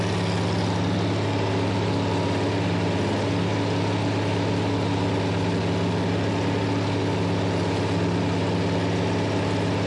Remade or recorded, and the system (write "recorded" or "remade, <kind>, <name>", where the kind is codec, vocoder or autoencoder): recorded